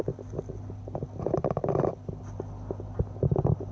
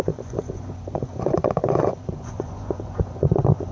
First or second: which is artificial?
second